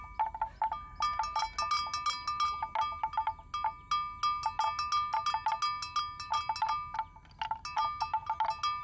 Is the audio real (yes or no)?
yes